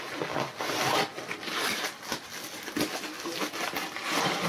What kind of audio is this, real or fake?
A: real